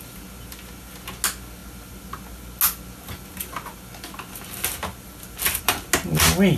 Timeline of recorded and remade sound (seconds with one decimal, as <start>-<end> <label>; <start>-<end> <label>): 0.0-6.6 recorded